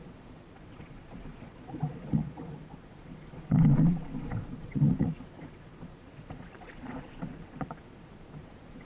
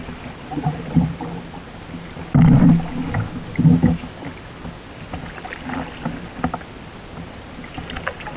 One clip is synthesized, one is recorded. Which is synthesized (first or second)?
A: first